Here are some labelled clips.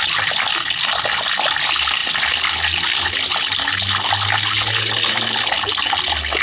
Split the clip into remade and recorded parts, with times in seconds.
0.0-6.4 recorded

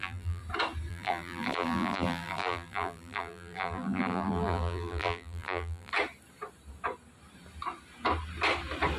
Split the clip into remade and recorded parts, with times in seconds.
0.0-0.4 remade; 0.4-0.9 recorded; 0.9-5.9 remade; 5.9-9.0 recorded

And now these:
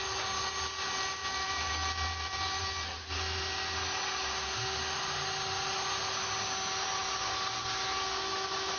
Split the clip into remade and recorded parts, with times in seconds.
0.0-1.2 recorded; 1.2-1.7 remade; 1.7-8.8 recorded

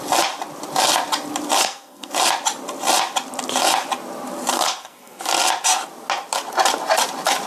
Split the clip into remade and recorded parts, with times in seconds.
0.0-1.6 recorded; 1.6-2.1 remade; 2.1-4.5 recorded; 4.5-5.2 remade; 5.2-7.5 recorded

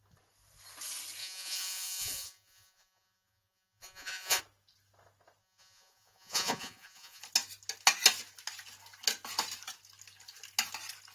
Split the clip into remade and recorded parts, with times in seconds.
0.0-1.2 recorded; 1.2-4.4 remade; 4.4-5.4 recorded; 5.4-7.2 remade; 7.2-11.1 recorded